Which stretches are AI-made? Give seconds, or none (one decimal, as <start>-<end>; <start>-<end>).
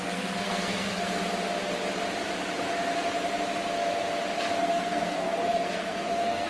0.0-1.2; 4.6-6.5